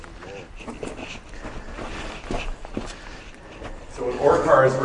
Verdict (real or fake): real